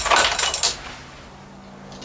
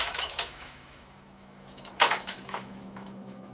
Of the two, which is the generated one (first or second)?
second